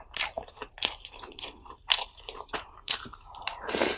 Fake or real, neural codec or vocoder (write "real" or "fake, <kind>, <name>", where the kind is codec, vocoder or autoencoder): fake, vocoder, BigVGAN v2